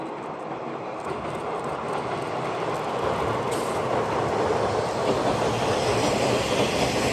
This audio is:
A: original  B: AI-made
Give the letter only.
A